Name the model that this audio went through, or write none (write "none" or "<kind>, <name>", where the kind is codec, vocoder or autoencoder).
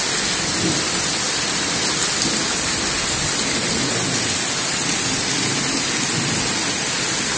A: none